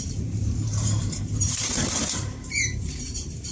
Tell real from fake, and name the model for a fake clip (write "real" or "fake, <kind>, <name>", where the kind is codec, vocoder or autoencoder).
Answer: fake, vocoder, BigVGAN v2